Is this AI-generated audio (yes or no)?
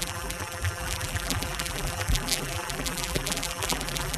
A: yes